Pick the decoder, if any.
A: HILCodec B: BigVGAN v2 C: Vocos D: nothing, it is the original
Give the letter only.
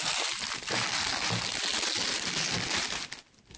D